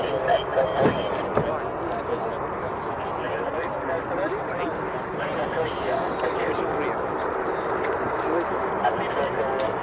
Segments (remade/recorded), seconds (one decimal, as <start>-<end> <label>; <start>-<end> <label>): 0.0-9.8 recorded